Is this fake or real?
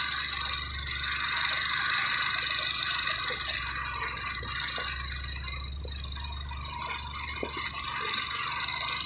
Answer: real